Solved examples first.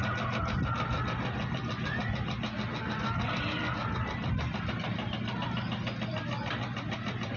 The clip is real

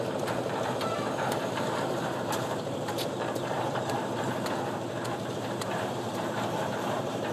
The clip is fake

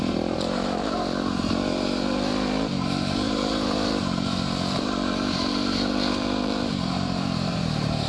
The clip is fake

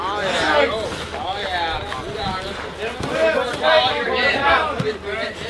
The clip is real